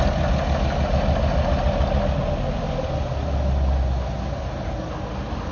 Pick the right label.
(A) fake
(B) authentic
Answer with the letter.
B